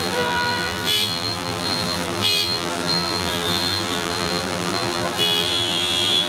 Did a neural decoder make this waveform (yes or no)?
yes